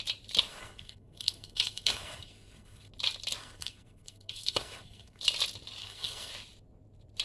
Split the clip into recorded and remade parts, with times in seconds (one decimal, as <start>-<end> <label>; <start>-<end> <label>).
0.0-0.5 recorded; 0.5-2.9 remade; 2.9-3.4 recorded; 3.4-5.2 remade; 5.2-5.8 recorded; 5.8-6.3 remade; 6.3-7.2 recorded